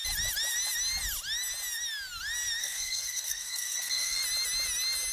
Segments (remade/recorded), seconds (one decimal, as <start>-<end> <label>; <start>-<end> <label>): 0.0-2.6 recorded; 2.6-4.2 remade; 4.2-5.1 recorded